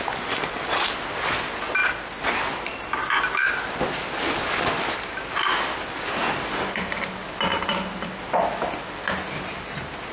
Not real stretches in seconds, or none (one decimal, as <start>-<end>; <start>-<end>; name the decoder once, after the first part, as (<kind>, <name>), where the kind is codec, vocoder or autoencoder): none